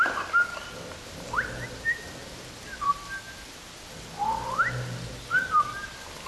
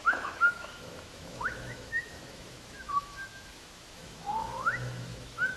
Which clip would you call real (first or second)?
first